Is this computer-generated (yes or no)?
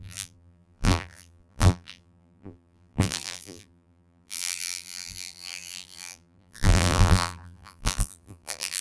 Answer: yes